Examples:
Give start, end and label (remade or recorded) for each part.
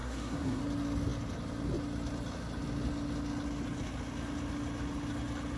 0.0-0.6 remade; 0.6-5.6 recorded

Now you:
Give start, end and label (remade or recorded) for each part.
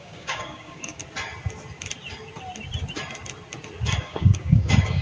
0.0-1.0 remade; 1.0-4.0 recorded; 4.0-5.0 remade